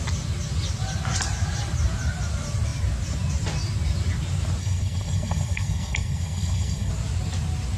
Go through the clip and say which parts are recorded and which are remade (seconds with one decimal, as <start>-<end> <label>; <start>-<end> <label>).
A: 0.0-4.6 recorded; 4.6-6.9 remade; 6.9-7.8 recorded